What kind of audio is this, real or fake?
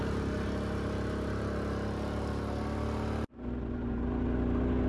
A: real